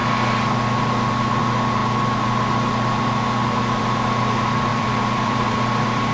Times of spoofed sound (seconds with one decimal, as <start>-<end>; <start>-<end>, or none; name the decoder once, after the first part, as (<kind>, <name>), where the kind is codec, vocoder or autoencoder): 4.7-5.5 (vocoder, BigVGAN v2)